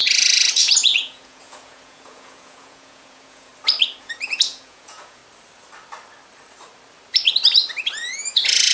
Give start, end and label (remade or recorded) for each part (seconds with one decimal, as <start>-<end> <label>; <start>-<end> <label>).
0.0-3.5 remade; 3.5-4.0 recorded; 4.0-5.2 remade; 5.2-7.9 recorded; 7.9-8.7 remade